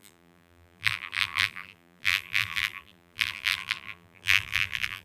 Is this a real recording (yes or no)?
no